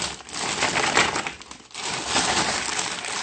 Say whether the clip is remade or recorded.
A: recorded